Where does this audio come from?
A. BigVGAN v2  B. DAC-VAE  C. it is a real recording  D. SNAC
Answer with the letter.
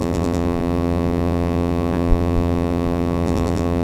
A